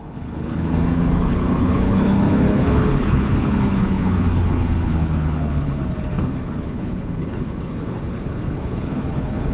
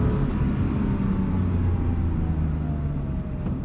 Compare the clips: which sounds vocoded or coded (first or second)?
first